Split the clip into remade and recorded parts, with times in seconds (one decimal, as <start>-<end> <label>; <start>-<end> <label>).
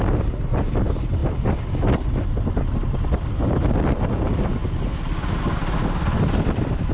0.0-6.9 recorded